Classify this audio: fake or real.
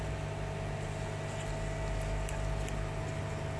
real